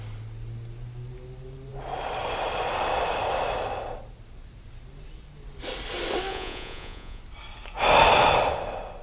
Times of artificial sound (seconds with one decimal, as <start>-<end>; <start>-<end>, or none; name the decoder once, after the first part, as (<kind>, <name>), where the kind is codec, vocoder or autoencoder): 6.3-7.2 (vocoder, Vocos)